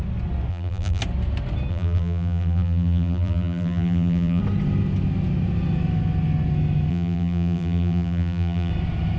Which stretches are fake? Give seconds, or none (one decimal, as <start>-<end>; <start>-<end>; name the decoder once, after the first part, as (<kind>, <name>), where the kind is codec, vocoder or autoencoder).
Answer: 0.5-1.0 (vocoder, BigVGAN v2); 1.7-4.4; 6.9-8.7